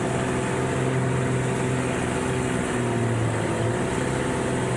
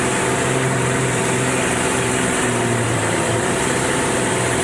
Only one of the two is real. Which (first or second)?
first